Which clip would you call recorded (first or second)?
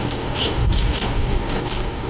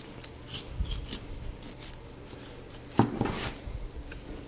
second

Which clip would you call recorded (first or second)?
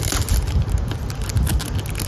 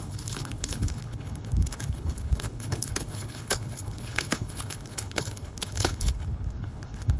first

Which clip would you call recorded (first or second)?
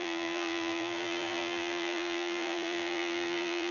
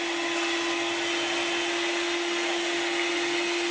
second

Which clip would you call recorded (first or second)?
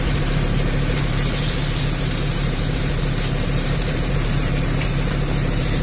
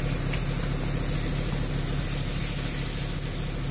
second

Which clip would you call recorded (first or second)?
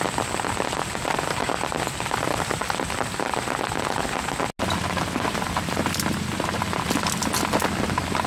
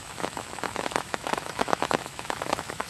first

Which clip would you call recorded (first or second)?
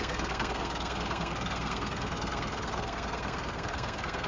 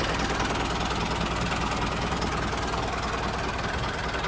second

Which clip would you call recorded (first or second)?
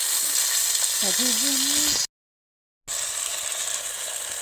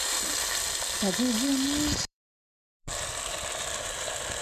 first